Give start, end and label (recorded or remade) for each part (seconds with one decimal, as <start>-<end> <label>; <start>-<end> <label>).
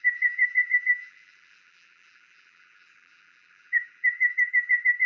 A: 0.0-5.1 remade